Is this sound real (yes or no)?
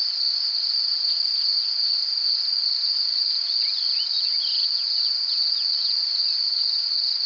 yes